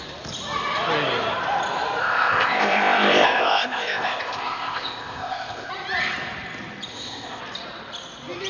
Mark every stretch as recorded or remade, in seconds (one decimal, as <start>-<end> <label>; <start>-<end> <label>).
0.0-2.0 recorded; 2.0-5.7 remade; 5.7-6.9 recorded; 6.9-7.4 remade; 7.4-8.5 recorded